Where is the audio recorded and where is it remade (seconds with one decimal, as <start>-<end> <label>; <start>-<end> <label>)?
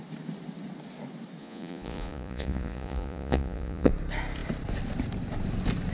0.0-1.4 recorded; 1.4-3.9 remade; 3.9-5.9 recorded